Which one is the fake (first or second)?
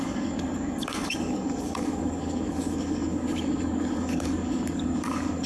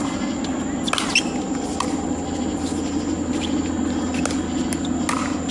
first